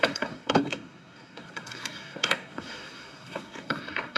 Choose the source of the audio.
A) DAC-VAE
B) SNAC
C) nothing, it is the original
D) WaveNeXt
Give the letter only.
B